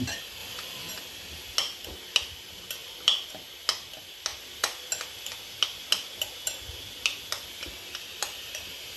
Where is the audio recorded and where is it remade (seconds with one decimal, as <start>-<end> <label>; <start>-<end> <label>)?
0.0-9.0 recorded